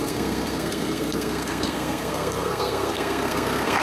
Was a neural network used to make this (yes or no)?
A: yes